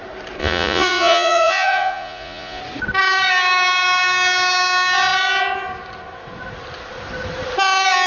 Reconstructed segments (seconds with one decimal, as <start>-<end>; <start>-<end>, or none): 0.4-2.6